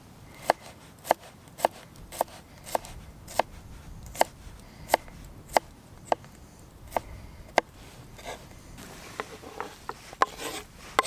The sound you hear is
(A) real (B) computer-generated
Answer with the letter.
A